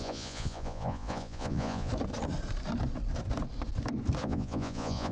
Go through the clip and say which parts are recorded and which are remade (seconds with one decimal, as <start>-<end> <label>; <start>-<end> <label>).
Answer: 0.0-1.9 remade; 1.9-4.2 recorded; 4.2-5.1 remade